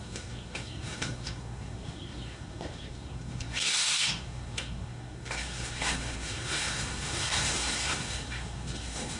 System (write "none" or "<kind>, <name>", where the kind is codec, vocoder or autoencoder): codec, SNAC